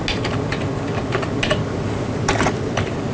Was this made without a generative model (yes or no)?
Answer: yes